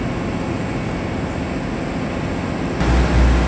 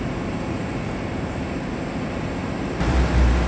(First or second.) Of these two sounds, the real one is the first